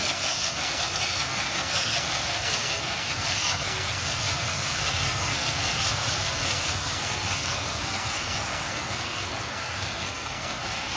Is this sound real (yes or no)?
no